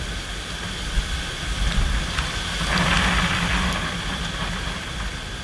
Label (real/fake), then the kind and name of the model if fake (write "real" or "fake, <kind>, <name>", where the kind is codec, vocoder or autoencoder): real